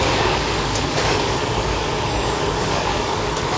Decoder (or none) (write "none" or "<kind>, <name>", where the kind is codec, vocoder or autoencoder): codec, DAC